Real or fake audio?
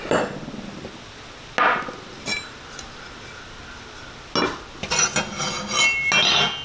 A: real